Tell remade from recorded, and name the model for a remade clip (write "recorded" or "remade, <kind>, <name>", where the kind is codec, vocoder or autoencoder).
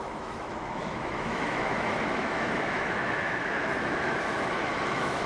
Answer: remade, autoencoder, DAC-VAE